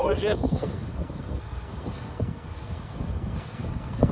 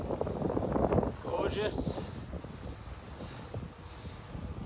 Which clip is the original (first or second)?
second